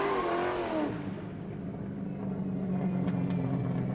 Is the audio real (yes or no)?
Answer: yes